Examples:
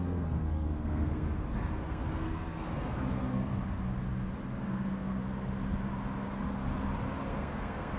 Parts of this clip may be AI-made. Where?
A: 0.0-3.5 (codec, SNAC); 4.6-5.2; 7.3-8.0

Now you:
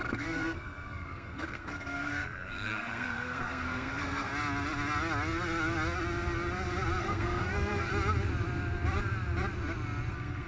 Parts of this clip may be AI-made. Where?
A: 0.0-4.3 (codec, SNAC); 7.0-7.9; 10.1-10.5

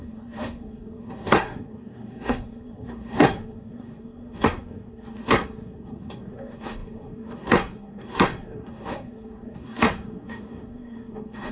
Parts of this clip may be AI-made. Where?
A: 0.0-11.5 (codec, SNAC)

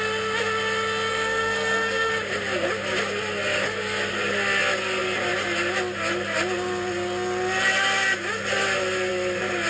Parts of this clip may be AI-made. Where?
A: 1.1-2.1 (codec, SNAC)

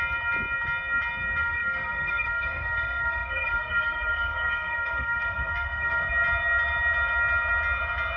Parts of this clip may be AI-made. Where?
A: 1.4-6.1 (codec, SNAC)